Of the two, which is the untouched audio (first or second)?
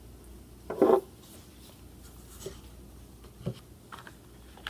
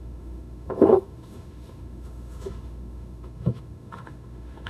first